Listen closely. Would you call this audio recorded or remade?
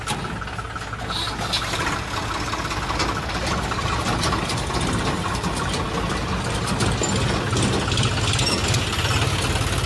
recorded